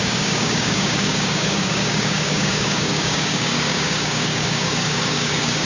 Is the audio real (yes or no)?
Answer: no